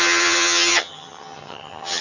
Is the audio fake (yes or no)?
yes